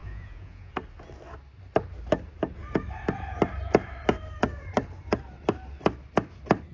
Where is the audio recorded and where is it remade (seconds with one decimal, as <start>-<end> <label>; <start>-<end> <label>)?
0.0-0.7 remade; 0.7-6.7 recorded

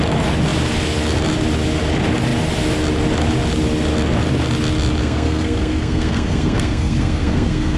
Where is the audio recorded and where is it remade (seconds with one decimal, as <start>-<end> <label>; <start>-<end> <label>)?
0.0-5.0 recorded; 5.0-7.8 remade

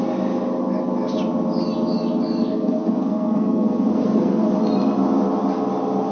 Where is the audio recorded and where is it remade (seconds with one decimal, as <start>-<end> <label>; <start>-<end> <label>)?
0.0-2.5 recorded; 2.5-4.5 remade; 4.5-6.1 recorded

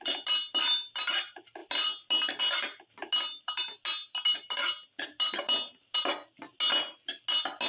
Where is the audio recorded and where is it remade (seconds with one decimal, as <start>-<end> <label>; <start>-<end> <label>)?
0.0-7.7 recorded

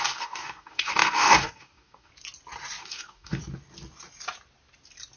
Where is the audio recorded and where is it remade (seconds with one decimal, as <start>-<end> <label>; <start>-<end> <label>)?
0.0-2.1 remade; 2.1-2.8 recorded; 2.8-3.4 remade; 3.4-5.2 recorded